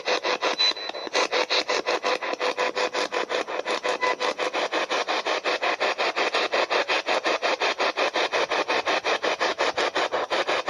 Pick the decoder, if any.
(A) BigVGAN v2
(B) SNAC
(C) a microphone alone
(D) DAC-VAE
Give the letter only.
C